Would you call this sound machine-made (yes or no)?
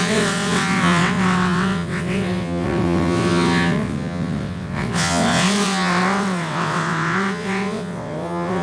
yes